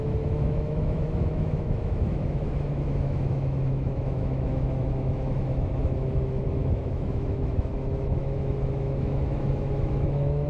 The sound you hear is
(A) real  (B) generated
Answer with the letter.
B